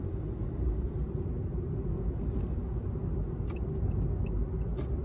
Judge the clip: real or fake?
real